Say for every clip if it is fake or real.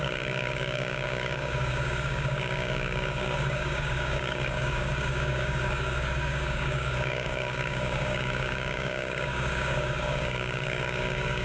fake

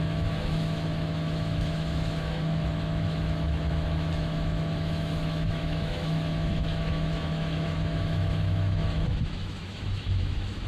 fake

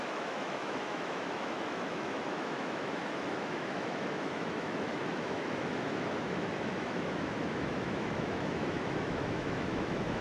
fake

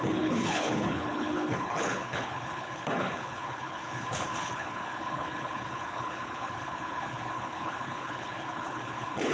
fake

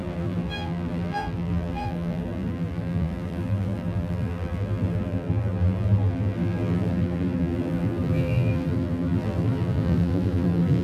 fake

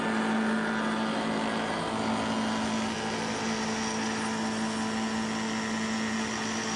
real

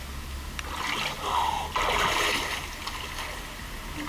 real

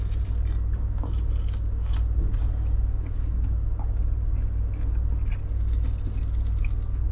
real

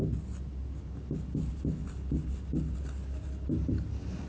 real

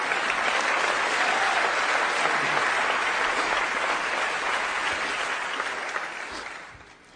real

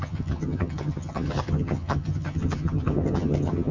fake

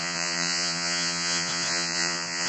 fake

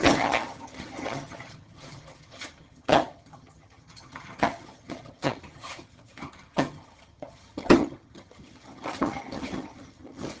fake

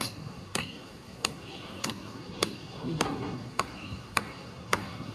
fake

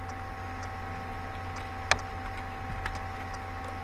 real